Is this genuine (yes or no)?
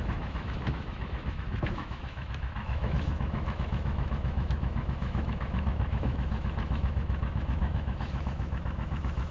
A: no